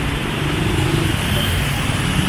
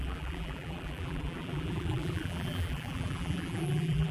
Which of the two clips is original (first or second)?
first